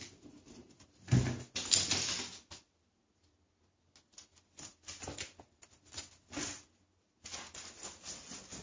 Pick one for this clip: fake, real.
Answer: real